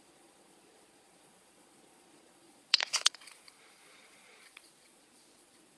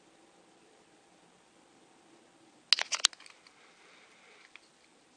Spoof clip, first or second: first